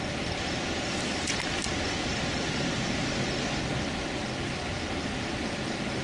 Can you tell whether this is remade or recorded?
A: recorded